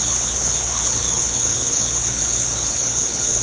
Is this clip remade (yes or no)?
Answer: yes